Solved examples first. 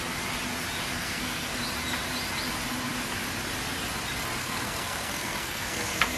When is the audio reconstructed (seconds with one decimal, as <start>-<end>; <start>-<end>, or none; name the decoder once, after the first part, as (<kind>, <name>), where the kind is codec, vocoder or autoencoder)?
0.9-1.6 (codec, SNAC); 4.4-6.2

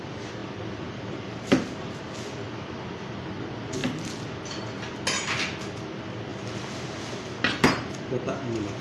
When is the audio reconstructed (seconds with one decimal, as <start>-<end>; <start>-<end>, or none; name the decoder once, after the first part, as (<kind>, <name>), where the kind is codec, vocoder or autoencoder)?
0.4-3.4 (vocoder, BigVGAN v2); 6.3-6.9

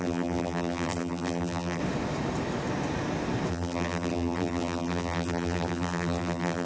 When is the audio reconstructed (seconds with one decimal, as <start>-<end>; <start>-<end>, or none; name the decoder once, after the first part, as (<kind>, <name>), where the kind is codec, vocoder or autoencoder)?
0.0-1.8 (vocoder, BigVGAN v2); 3.5-6.7

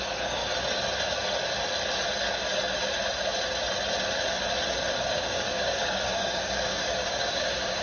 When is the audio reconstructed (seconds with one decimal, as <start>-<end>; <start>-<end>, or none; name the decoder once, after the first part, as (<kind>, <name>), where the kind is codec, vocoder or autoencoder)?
0.0-0.4 (codec, DAC); 5.1-7.8

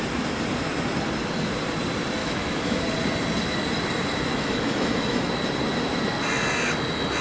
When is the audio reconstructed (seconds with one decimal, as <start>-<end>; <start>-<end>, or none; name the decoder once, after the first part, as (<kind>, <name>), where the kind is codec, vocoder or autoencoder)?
2.2-2.8 (autoencoder, DAC-VAE); 4.3-5.3

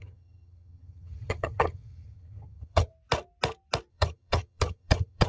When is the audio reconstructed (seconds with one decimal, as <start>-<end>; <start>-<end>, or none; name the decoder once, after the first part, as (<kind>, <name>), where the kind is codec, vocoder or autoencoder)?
0.0-2.9 (vocoder, HiFi-GAN); 3.9-5.3

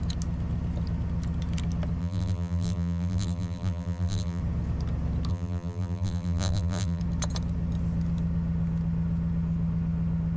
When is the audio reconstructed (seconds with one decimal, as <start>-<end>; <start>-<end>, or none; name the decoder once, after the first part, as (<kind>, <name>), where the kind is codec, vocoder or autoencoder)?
2.0-4.4 (vocoder, BigVGAN v2); 5.3-7.0